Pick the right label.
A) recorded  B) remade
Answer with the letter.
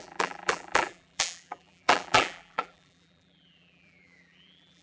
B